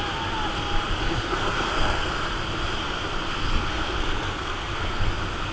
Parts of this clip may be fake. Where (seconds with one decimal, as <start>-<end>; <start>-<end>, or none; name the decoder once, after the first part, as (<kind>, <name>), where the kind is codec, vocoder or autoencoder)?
1.0-2.1 (codec, SNAC); 3.3-5.1